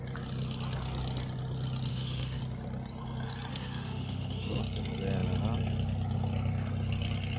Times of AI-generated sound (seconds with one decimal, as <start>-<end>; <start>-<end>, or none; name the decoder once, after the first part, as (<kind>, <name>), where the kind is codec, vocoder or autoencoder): 1.9-2.4 (autoencoder, DAC-VAE); 3.5-4.6